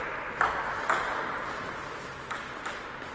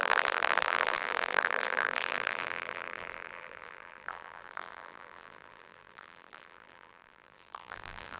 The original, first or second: first